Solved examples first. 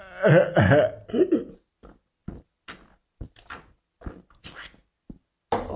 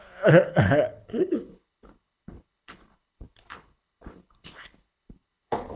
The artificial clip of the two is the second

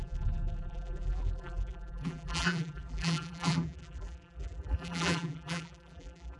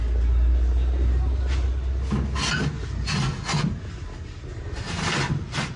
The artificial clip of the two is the first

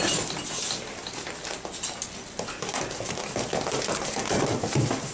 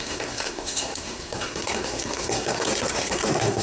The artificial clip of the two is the second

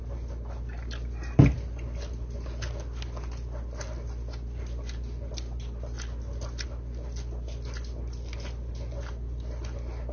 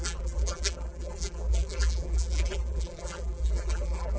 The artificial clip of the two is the second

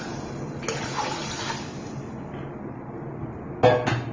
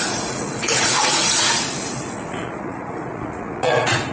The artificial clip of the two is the second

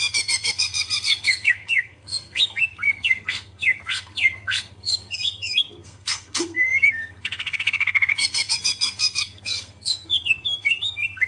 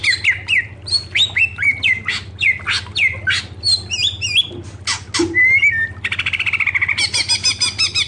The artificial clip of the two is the first